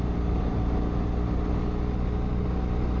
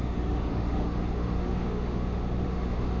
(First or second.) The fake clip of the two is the second